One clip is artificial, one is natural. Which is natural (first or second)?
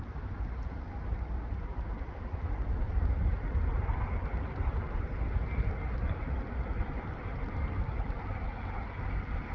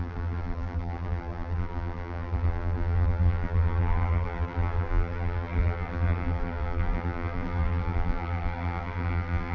first